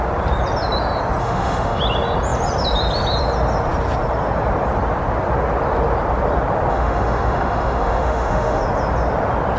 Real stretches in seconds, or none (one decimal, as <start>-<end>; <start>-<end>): 0.0-1.2; 1.8-6.7; 8.6-9.6